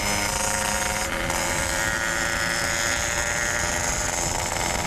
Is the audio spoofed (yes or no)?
no